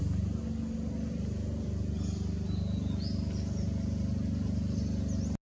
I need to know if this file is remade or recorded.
recorded